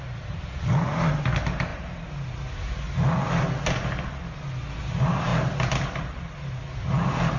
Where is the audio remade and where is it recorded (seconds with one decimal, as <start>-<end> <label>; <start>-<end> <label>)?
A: 0.0-7.4 recorded